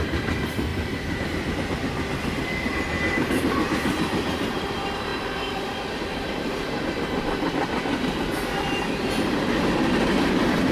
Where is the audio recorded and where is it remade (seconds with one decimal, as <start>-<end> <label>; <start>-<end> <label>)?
0.0-10.7 remade